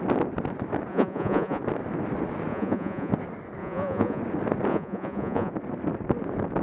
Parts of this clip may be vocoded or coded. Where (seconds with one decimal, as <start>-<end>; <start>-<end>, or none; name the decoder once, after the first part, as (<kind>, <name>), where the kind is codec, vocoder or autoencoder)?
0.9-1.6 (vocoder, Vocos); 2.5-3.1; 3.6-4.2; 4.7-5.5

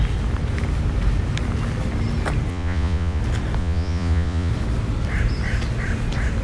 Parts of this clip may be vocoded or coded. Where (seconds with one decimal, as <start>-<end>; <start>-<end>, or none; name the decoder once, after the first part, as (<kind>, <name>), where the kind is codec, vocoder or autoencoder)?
2.5-3.2 (vocoder, Vocos); 3.6-4.5

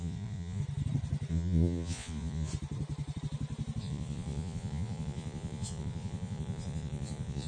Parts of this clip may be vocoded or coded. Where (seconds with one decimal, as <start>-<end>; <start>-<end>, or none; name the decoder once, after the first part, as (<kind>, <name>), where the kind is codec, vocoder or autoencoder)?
0.0-0.6 (vocoder, Vocos); 1.3-2.5; 3.8-7.5